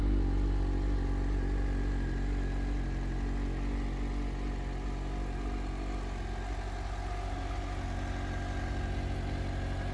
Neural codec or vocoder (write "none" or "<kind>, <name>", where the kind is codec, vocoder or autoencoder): none